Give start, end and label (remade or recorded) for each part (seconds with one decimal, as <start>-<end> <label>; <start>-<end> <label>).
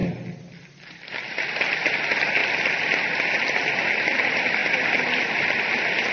0.0-2.4 recorded; 2.4-3.2 remade; 3.2-4.6 recorded; 4.6-5.2 remade; 5.2-6.1 recorded